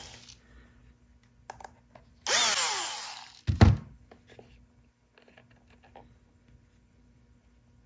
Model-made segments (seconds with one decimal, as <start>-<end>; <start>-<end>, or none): none

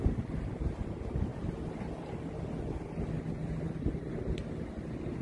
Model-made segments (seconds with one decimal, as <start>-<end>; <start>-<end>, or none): none

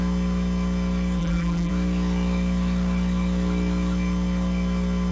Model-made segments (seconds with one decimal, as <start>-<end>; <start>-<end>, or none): 1.2-1.7